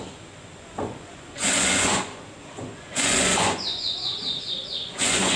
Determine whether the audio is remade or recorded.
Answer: remade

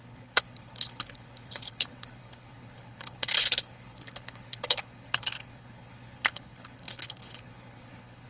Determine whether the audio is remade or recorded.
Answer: remade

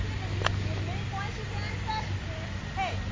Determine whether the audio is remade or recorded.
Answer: recorded